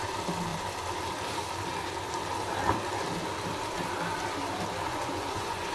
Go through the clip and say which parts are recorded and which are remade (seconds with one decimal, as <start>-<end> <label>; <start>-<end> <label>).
0.0-4.9 recorded; 4.9-5.7 remade